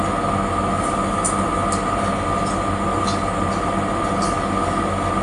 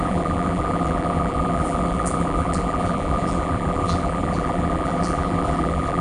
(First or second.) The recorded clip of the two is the first